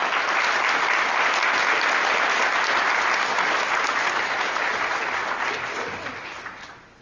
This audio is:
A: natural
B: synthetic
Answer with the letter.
A